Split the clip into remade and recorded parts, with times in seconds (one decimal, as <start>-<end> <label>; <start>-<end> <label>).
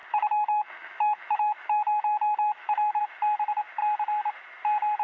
0.0-3.0 remade; 3.0-5.0 recorded